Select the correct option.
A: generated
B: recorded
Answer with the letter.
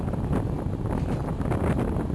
B